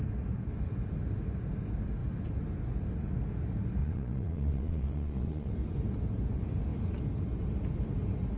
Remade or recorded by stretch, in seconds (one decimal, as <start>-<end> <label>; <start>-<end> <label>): 0.0-3.8 recorded; 3.8-5.5 remade; 5.5-8.4 recorded